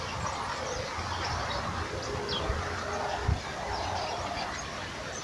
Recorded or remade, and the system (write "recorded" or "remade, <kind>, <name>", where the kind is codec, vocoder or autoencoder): recorded